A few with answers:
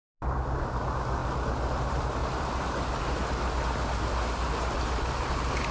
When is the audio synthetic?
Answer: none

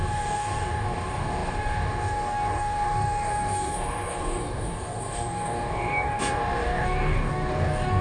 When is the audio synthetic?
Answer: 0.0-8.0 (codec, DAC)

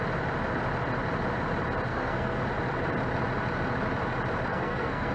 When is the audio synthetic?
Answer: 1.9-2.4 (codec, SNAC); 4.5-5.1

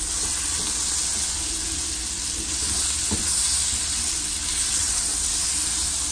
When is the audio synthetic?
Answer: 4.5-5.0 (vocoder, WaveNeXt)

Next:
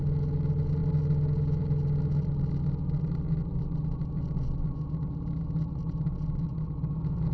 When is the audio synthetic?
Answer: none